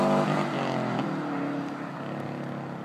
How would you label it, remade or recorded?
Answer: recorded